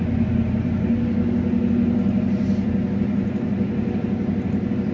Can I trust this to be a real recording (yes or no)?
yes